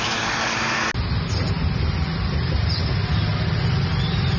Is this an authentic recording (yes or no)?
yes